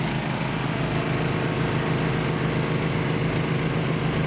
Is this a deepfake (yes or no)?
no